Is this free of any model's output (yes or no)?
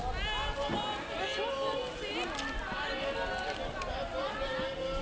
yes